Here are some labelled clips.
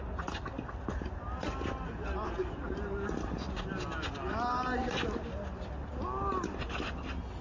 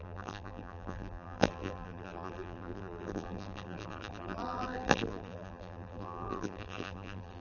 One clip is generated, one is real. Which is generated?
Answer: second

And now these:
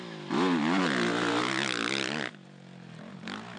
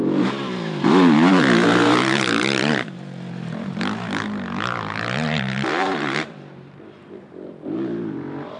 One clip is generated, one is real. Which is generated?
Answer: second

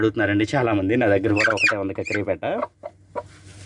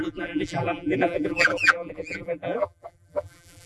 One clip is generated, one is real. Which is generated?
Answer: second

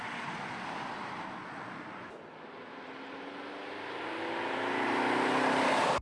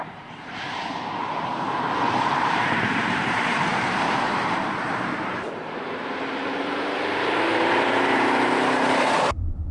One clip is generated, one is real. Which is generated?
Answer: second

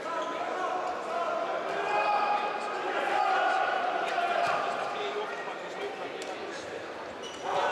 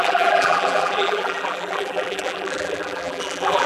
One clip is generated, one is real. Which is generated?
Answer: second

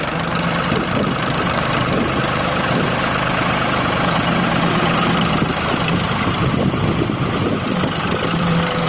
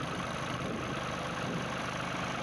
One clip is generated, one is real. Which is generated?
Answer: first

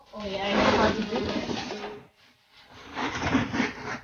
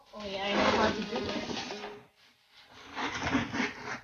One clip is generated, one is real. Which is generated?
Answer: first